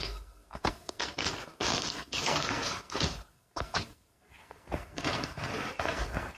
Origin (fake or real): fake